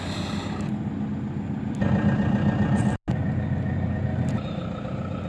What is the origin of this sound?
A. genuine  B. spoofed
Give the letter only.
A